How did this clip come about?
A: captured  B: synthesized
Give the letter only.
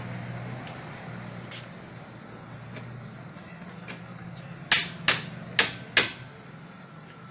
A